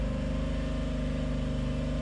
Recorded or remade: recorded